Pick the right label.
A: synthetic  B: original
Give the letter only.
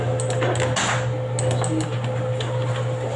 B